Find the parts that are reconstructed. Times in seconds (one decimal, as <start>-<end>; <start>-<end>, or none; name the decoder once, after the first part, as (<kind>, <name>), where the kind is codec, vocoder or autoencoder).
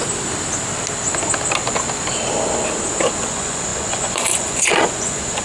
3.2-5.4 (vocoder, Vocos)